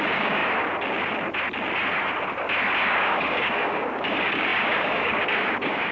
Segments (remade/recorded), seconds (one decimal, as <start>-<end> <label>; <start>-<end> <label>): 0.0-0.4 remade; 0.4-2.8 recorded; 2.8-5.9 remade